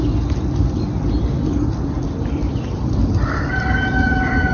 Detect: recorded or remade recorded